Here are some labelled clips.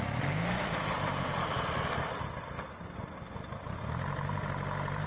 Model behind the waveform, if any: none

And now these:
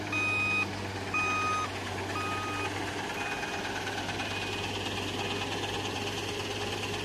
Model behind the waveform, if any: none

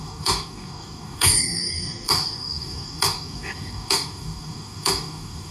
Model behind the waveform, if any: codec, DAC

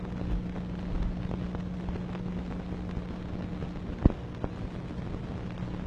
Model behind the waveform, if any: none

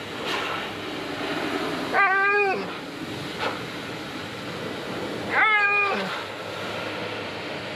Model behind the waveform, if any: none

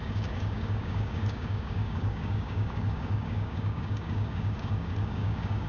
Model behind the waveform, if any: codec, DAC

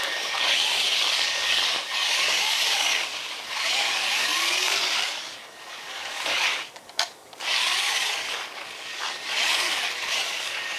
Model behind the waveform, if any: codec, DAC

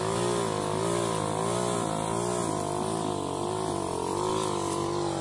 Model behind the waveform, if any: none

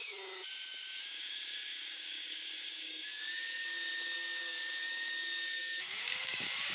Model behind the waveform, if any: codec, DAC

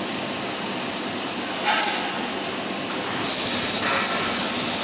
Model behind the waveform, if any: none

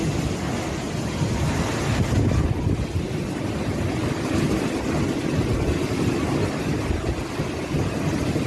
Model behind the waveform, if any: none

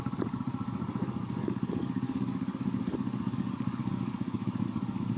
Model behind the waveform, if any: codec, DAC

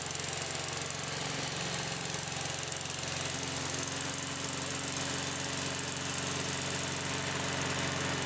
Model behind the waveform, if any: none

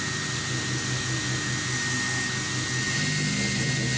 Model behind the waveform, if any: none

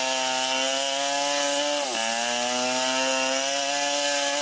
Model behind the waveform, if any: none